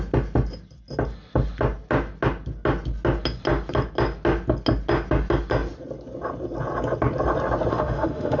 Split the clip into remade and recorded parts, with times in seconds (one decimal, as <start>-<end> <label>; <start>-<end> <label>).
0.0-7.7 recorded; 7.7-8.4 remade